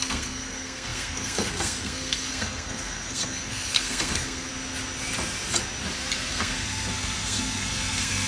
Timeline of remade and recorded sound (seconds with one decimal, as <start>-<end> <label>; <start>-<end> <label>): 0.0-4.5 remade; 4.5-6.3 recorded; 6.3-8.3 remade